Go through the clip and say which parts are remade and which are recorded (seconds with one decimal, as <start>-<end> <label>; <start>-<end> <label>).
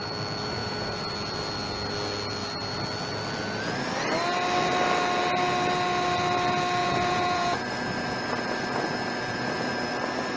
0.0-0.6 recorded; 0.6-1.1 remade; 1.1-6.8 recorded; 6.8-9.7 remade; 9.7-10.4 recorded